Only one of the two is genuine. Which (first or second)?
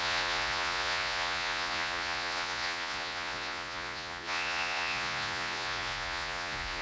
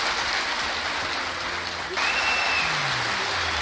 second